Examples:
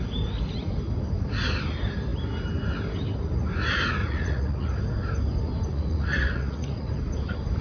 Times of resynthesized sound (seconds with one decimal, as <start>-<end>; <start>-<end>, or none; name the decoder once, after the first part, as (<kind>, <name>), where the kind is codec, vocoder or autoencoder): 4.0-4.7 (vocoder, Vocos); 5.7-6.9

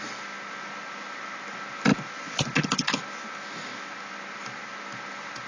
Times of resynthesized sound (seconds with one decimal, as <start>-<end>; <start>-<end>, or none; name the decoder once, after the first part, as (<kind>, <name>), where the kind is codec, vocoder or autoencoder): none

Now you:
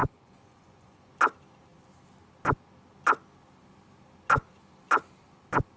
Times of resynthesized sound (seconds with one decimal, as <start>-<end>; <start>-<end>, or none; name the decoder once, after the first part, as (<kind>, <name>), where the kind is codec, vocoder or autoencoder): 0.0-1.1 (vocoder, Vocos)

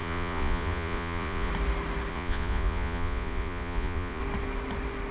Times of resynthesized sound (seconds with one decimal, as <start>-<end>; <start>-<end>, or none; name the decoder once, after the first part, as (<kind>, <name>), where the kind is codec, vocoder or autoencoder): 0.0-1.5 (vocoder, Vocos); 2.1-4.2